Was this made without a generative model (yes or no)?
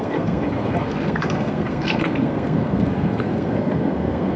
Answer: no